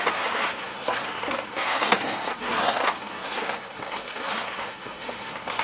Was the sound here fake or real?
fake